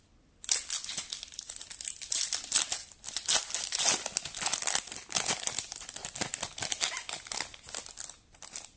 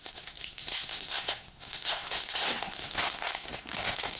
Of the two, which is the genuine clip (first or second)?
first